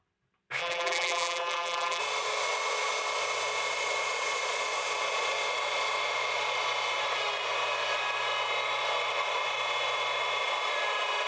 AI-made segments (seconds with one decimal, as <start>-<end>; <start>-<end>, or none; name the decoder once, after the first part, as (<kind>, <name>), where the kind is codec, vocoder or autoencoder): 0.6-2.0 (vocoder, BigVGAN v2)